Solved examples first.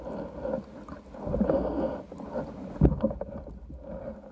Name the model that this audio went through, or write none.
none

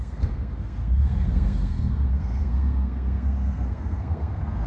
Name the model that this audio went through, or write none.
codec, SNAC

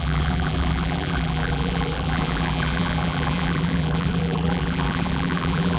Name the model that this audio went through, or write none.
vocoder, BigVGAN v2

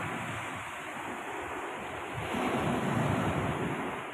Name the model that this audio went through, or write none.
none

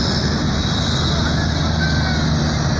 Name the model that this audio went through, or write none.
none